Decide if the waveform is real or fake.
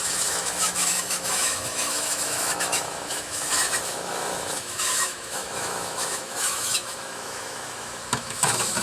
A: fake